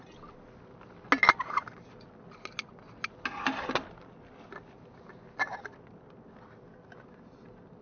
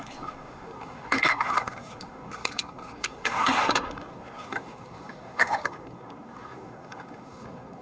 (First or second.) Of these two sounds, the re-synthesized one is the second